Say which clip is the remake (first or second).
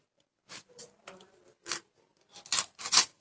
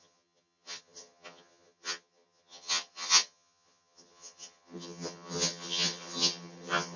second